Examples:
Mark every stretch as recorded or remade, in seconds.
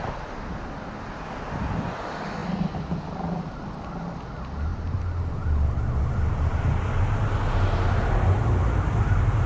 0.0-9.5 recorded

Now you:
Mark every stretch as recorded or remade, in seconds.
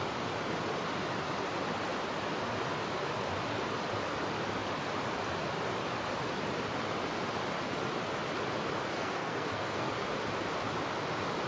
0.0-8.9 recorded; 8.9-9.9 remade; 9.9-11.5 recorded